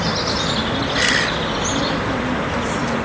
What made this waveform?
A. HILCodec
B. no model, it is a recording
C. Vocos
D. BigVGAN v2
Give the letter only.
B